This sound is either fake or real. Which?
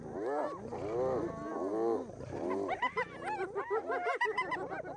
real